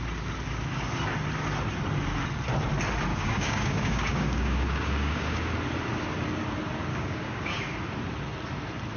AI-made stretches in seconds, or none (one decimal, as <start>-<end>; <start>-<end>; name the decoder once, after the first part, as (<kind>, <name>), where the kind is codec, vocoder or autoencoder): 3.1-5.5 (codec, DAC); 6.9-7.6